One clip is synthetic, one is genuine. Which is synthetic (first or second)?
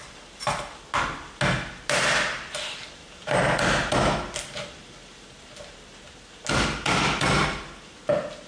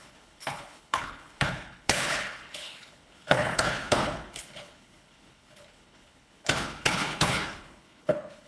second